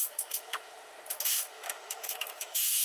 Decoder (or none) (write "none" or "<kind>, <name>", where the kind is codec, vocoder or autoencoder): autoencoder, DAC-VAE